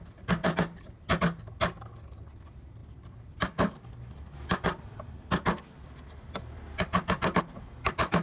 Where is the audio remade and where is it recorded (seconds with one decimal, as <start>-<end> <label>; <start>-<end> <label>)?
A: 0.0-0.4 recorded; 0.4-1.2 remade; 1.2-8.2 recorded